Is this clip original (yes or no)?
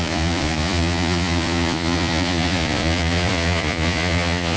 no